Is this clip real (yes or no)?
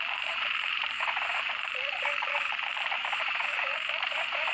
no